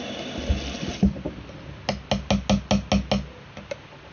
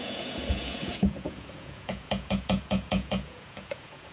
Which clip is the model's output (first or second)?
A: second